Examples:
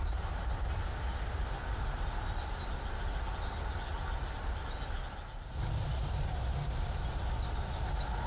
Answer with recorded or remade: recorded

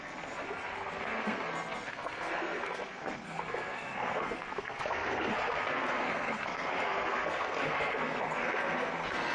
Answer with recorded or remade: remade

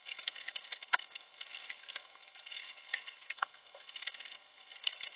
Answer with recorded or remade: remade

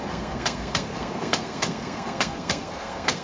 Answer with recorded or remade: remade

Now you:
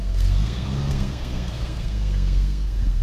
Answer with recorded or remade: remade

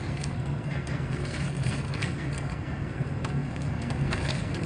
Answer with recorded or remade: remade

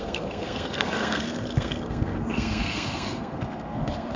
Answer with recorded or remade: remade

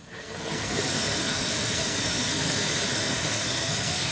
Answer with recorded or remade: remade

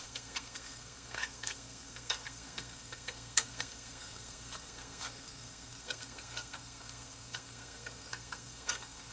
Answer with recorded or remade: remade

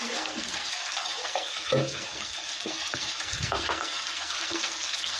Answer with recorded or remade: remade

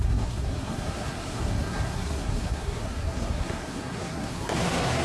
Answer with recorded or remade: remade